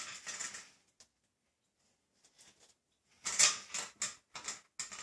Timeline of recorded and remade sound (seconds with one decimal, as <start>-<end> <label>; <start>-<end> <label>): 0.0-5.0 recorded